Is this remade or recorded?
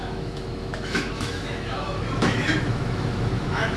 remade